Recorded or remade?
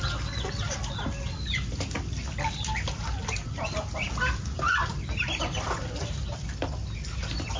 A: recorded